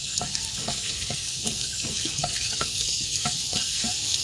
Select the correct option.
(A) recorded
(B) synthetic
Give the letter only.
B